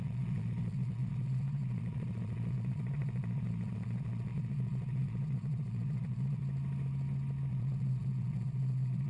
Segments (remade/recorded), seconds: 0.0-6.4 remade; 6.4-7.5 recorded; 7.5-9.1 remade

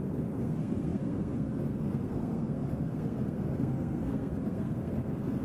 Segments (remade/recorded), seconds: 0.0-5.4 remade

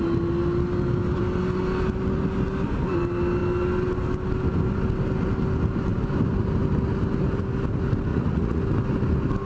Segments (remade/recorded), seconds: 0.0-8.1 recorded; 8.1-8.6 remade; 8.6-9.5 recorded

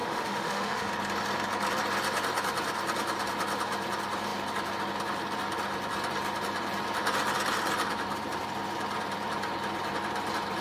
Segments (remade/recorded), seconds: 0.0-0.9 remade; 0.9-10.6 recorded